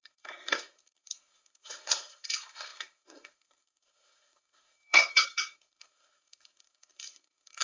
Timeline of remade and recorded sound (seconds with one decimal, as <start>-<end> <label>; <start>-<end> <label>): 0.0-7.6 remade